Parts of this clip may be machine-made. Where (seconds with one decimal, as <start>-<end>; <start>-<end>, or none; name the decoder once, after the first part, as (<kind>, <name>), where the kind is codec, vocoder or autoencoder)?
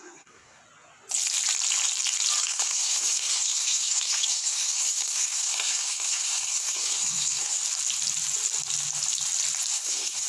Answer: 0.0-0.6 (codec, SNAC); 2.4-7.6; 9.7-10.3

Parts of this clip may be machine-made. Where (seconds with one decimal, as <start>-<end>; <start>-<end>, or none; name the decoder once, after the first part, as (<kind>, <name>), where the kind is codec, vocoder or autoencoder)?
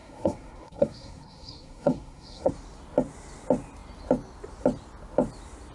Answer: 0.0-2.5 (codec, SNAC)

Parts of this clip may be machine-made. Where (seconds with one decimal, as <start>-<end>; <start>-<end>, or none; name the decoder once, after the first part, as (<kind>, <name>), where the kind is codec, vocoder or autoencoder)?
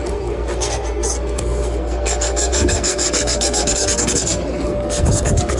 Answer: 0.0-5.6 (codec, SNAC)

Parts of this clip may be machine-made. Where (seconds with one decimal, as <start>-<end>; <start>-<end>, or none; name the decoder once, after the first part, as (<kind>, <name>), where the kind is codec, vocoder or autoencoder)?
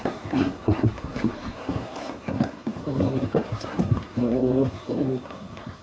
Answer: 0.0-5.8 (codec, SNAC)